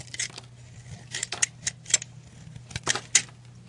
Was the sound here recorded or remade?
recorded